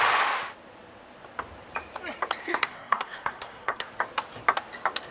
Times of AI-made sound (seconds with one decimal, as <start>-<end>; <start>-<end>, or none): 2.4-3.9